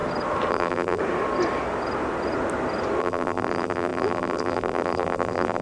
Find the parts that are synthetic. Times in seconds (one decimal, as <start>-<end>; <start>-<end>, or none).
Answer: 0.5-1.0; 3.0-5.6